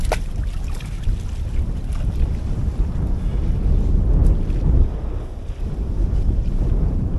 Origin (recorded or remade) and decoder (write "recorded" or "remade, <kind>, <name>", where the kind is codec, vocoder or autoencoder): recorded